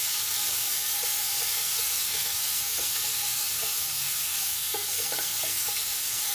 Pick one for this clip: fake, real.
fake